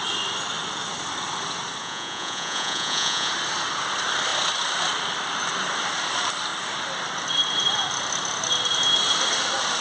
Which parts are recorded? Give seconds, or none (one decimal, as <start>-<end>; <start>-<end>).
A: 0.0-1.8; 3.3-9.8